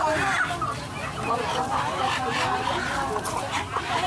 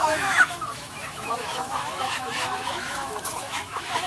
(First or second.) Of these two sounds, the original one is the first